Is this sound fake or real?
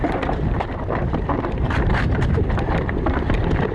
fake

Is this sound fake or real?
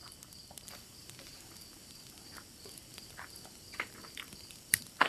fake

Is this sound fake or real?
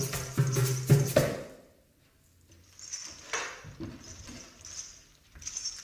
real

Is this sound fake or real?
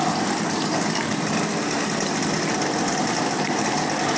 real